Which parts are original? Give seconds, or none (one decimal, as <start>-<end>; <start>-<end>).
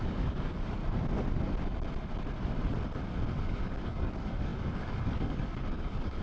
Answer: 0.8-3.4